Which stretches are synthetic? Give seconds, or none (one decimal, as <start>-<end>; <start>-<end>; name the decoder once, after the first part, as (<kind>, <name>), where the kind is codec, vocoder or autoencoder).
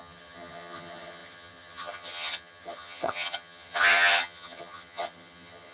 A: 0.0-5.7 (vocoder, HiFi-GAN)